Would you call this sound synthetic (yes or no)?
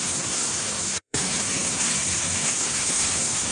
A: yes